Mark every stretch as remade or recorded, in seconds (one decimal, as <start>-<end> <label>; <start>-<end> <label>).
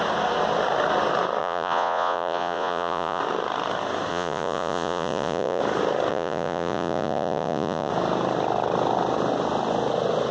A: 0.0-1.4 recorded; 1.4-3.2 remade; 3.2-4.1 recorded; 4.1-5.6 remade; 5.6-6.1 recorded; 6.1-7.9 remade; 7.9-10.3 recorded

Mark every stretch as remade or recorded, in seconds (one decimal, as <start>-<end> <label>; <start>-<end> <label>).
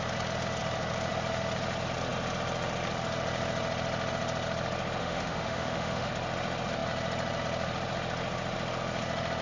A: 0.0-5.0 recorded; 5.0-6.1 remade; 6.1-9.4 recorded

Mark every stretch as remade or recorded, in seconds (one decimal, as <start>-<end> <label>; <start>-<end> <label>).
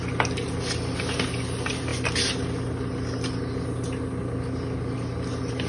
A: 0.0-5.7 recorded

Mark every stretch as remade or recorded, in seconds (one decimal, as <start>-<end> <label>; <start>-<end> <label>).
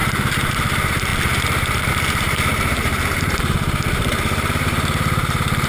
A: 0.0-5.7 remade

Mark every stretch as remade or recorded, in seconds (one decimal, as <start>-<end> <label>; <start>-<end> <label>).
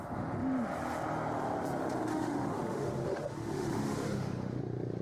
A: 0.0-2.1 recorded; 2.1-4.6 remade; 4.6-5.0 recorded